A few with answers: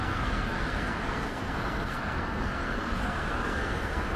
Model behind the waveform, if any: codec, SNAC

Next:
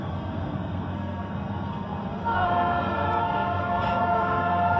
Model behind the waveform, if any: codec, SNAC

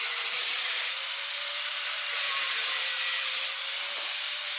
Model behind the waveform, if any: vocoder, BigVGAN v2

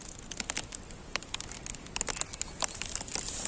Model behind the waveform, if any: none